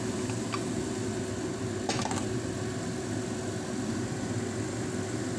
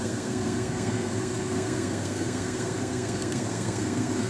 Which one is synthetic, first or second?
second